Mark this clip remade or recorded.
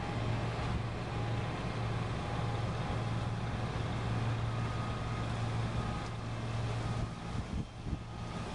recorded